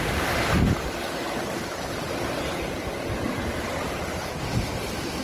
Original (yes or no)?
yes